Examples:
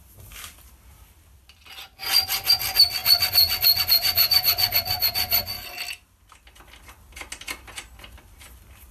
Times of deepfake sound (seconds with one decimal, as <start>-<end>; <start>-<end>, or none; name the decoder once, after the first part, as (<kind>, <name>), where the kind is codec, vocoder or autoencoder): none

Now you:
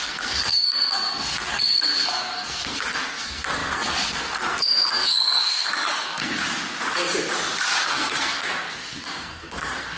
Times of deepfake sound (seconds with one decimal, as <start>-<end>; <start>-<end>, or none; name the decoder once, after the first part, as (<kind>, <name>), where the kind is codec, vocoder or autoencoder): 0.0-6.4 (codec, SNAC); 7.8-10.0

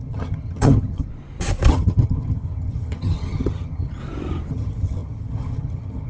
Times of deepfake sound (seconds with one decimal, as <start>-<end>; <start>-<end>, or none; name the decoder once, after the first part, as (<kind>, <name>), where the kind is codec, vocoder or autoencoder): 0.0-1.1 (vocoder, HiFi-GAN); 1.7-4.0; 4.5-6.1

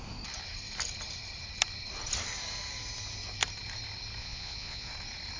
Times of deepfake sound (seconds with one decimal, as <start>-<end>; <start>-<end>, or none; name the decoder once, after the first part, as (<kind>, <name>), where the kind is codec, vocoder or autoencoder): 4.2-4.9 (vocoder, Vocos)

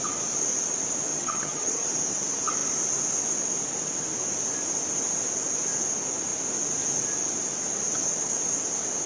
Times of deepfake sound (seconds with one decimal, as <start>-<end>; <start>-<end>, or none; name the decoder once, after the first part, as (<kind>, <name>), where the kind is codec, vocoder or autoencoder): 1.1-1.9 (vocoder, HiFi-GAN)

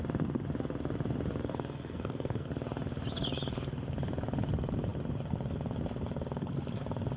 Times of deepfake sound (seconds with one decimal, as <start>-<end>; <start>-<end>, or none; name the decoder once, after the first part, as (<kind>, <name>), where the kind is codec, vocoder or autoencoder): 1.4-2.5 (codec, SNAC)

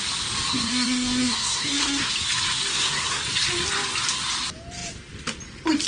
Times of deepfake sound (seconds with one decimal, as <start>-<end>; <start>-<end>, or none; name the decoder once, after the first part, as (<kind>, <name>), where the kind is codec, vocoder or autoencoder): 0.5-2.1 (codec, SNAC); 2.7-3.2